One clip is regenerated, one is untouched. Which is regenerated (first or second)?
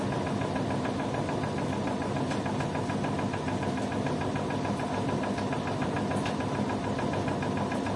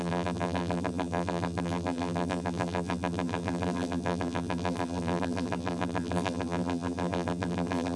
second